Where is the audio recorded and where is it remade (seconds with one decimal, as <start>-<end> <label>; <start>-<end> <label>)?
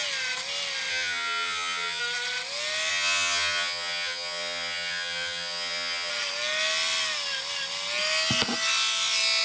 0.0-0.9 recorded; 0.9-2.0 remade; 2.0-2.9 recorded; 2.9-6.1 remade; 6.1-9.4 recorded